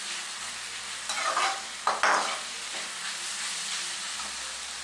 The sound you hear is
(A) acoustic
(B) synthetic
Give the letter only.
A